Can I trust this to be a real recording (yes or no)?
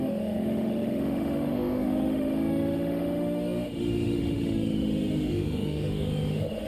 no